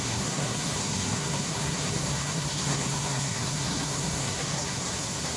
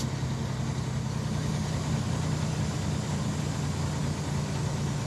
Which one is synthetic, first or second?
first